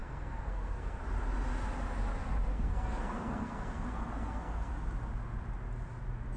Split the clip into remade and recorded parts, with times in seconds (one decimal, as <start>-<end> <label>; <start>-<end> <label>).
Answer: 0.0-1.0 remade; 1.0-2.5 recorded; 2.5-4.7 remade; 4.7-6.4 recorded